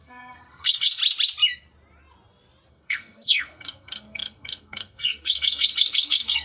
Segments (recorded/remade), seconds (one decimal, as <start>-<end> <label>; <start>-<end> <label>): 0.0-1.0 remade; 1.0-2.7 recorded; 2.7-6.4 remade